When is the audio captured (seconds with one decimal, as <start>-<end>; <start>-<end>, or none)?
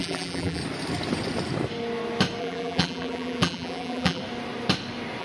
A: 0.6-2.4; 4.2-5.2